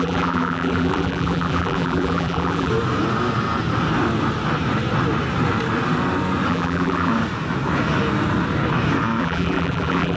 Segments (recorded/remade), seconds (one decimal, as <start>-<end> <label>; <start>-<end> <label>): 0.0-2.7 remade; 2.7-6.5 recorded; 6.5-7.1 remade; 7.1-9.2 recorded; 9.2-10.2 remade